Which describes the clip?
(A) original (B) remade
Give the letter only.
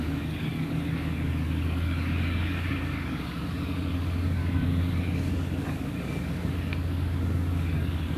B